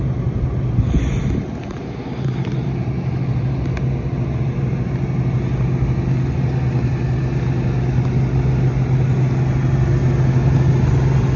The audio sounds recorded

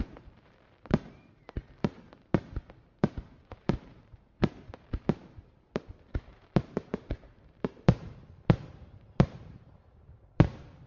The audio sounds remade